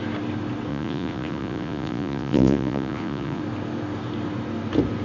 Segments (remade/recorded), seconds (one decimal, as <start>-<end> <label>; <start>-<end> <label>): 0.0-0.7 recorded; 0.7-3.4 remade; 3.4-5.0 recorded